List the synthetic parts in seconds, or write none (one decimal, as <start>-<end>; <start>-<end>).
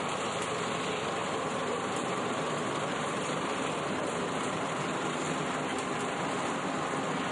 1.2-4.7